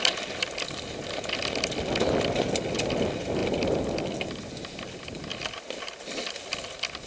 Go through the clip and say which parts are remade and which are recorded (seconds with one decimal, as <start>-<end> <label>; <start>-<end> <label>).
0.0-7.1 recorded